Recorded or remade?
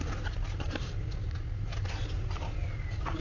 recorded